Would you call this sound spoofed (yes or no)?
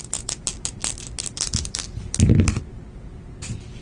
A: yes